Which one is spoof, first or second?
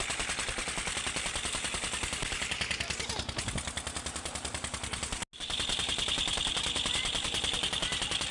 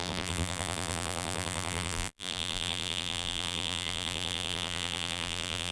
second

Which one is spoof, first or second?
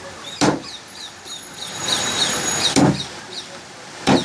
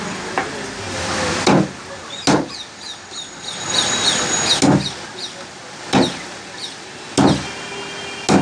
first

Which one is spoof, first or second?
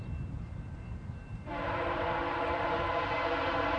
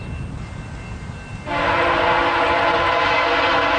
first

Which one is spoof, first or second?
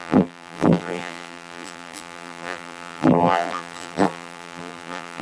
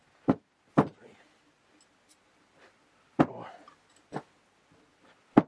first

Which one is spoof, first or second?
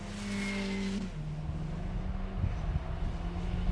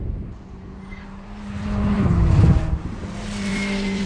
second